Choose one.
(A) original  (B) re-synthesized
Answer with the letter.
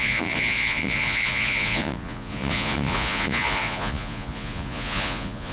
B